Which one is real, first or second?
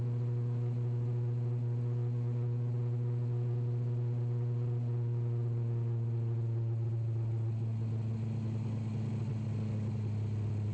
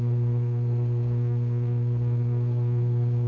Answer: first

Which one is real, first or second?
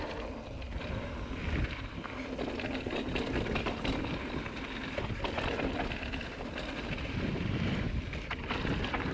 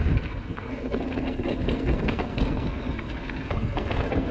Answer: first